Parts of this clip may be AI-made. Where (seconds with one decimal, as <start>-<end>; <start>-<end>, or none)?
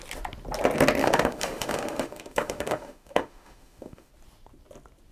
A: 1.0-4.1